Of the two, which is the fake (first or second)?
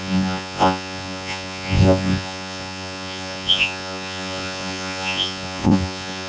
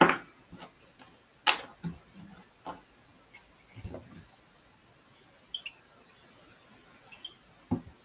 first